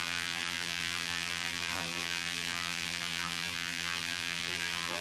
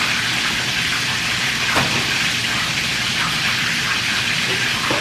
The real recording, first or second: second